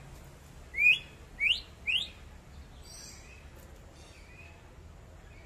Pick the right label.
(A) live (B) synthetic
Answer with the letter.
A